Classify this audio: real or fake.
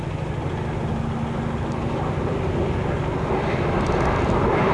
real